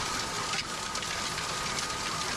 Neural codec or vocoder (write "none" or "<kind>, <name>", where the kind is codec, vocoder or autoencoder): none